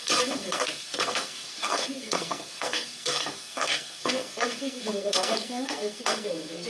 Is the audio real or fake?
fake